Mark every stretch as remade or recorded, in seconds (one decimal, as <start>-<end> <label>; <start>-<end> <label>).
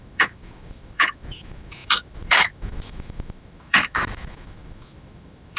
0.0-5.6 remade